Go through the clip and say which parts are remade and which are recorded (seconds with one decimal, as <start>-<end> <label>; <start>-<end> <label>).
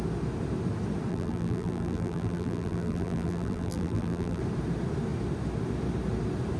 0.0-1.1 recorded; 1.1-4.4 remade; 4.4-6.6 recorded